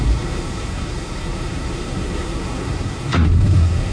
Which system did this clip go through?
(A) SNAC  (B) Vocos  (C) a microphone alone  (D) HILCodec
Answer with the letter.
A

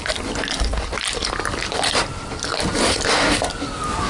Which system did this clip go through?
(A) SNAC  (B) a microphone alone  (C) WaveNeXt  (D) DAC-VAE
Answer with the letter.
B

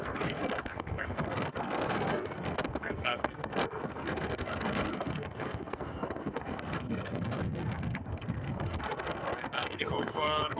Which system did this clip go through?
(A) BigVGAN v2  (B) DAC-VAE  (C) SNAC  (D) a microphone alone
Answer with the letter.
C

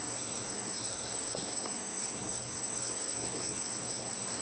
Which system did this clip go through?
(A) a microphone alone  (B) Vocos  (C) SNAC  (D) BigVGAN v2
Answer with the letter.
C